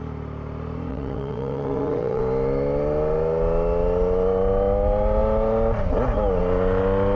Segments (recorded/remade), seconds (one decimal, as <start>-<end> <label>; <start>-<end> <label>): 0.0-0.9 recorded; 0.9-2.2 remade; 2.2-7.2 recorded